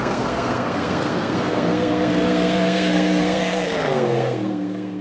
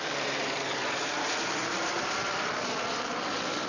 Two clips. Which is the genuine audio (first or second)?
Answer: second